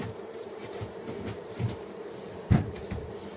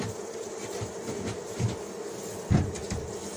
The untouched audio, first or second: second